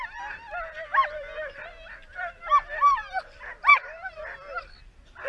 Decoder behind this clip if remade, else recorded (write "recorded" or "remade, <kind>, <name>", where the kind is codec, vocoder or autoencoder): recorded